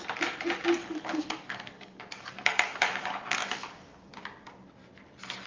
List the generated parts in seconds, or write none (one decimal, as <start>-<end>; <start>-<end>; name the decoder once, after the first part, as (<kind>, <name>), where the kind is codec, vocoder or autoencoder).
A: 0.8-4.1 (codec, DAC)